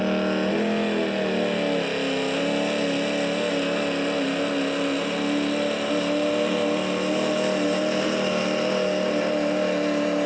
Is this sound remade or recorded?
recorded